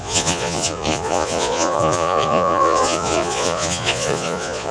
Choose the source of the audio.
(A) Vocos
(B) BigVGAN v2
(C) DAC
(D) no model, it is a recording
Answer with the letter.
A